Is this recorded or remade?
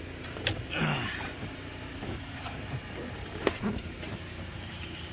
remade